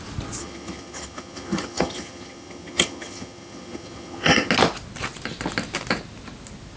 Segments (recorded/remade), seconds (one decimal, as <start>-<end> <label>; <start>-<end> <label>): 0.0-0.4 recorded; 0.4-4.5 remade; 4.5-6.8 recorded

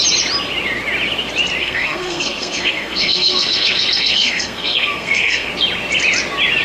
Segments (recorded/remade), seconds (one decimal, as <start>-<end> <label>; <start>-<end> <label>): 0.0-1.6 recorded; 1.6-5.5 remade; 5.5-6.6 recorded

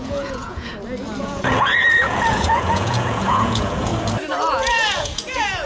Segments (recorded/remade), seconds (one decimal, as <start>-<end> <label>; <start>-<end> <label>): 0.0-0.7 remade; 0.7-1.2 recorded; 1.2-3.9 remade; 3.9-4.5 recorded; 4.5-5.7 remade

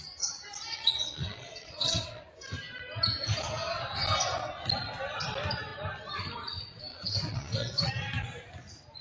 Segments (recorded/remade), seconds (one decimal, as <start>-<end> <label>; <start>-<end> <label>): 0.0-0.7 recorded; 0.7-2.2 remade; 2.2-6.9 recorded; 6.9-7.9 remade; 7.9-9.0 recorded